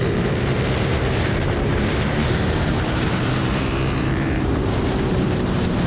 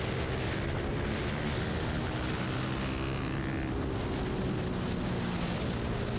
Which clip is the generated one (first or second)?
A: first